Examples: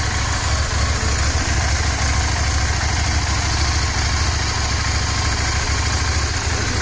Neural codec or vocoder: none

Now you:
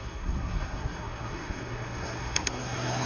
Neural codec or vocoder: codec, SNAC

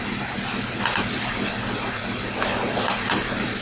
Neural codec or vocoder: none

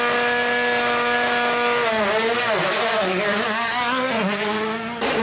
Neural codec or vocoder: none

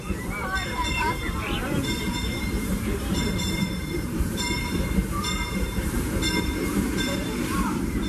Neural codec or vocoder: vocoder, BigVGAN v2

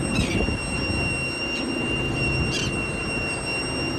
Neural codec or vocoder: none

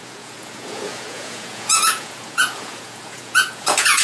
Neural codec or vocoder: vocoder, Vocos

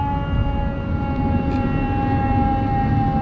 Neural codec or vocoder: none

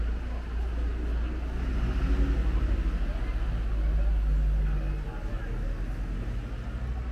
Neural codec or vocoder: none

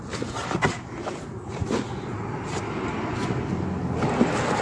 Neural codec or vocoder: none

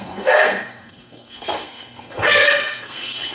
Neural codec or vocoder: codec, SNAC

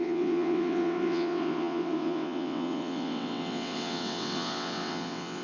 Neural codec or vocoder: vocoder, WaveNeXt